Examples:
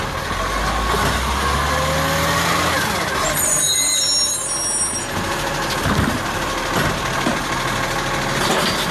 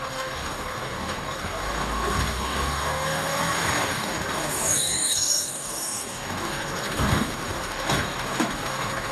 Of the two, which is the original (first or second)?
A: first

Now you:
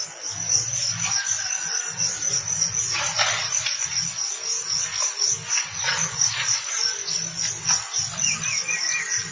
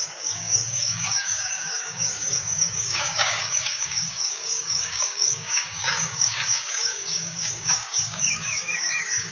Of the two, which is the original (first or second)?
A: first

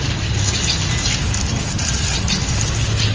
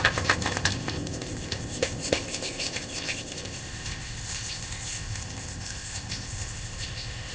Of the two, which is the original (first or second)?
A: first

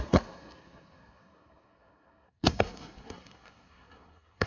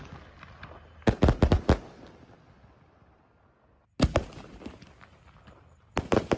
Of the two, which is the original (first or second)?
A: second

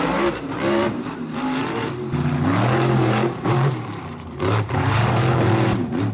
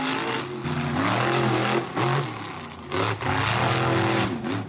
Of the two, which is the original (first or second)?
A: second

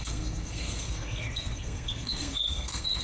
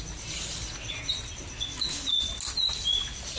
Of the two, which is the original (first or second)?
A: second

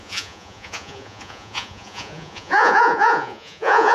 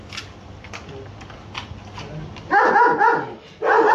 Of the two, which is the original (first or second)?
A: second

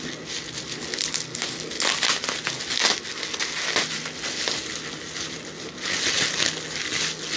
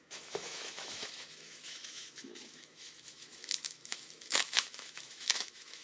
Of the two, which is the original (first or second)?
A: first